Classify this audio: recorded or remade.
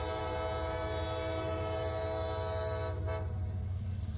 recorded